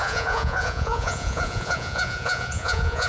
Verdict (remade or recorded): remade